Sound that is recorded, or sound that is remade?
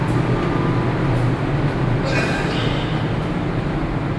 recorded